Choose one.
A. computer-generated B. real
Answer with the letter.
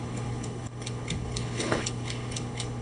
A